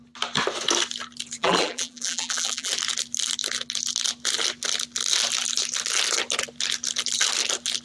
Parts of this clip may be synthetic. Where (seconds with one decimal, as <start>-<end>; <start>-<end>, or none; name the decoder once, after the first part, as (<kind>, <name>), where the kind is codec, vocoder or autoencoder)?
1.4-2.7 (vocoder, BigVGAN v2)